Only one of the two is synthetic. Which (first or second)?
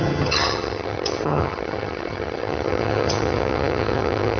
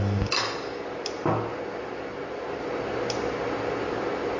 first